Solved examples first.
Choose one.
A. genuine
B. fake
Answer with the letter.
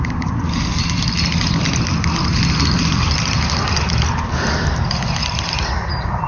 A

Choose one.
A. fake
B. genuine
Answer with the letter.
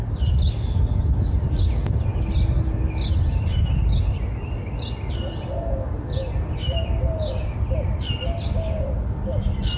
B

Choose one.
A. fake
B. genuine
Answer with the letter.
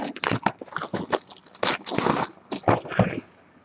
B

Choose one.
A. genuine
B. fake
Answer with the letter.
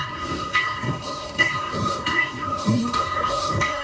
B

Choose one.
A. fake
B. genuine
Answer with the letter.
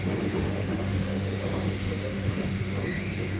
A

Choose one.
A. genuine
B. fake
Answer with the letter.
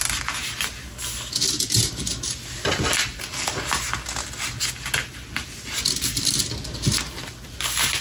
A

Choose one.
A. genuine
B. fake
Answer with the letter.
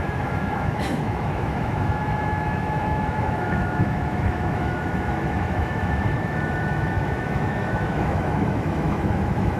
B